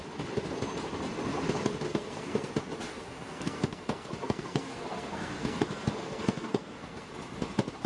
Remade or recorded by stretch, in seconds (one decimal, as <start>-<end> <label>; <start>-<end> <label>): 0.0-1.9 recorded; 1.9-2.5 remade; 2.5-2.9 recorded; 2.9-7.1 remade; 7.1-7.9 recorded